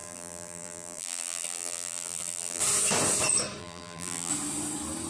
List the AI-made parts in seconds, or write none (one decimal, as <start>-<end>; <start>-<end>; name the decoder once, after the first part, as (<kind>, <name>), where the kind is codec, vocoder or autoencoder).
0.0-2.6 (vocoder, BigVGAN v2); 3.6-4.3